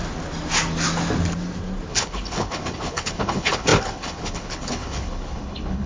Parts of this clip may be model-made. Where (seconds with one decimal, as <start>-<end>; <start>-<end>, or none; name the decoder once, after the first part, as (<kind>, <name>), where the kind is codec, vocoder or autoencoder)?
1.9-5.9 (codec, HILCodec)